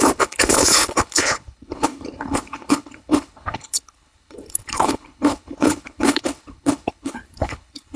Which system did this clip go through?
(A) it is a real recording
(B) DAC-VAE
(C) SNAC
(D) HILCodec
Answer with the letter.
D